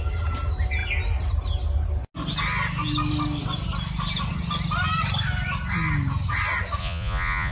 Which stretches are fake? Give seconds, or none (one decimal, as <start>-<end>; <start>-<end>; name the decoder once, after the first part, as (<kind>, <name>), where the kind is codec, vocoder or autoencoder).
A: 6.8-7.5 (vocoder, Vocos)